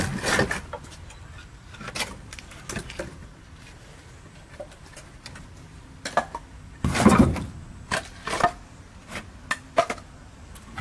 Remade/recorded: recorded